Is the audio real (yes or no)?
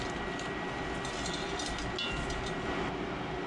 yes